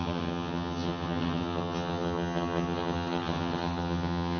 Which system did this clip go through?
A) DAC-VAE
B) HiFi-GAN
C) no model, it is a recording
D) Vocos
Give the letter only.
B